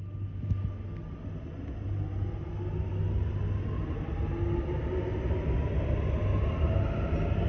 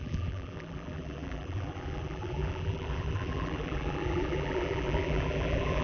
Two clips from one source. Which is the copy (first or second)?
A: second